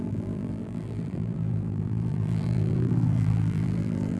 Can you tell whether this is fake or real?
fake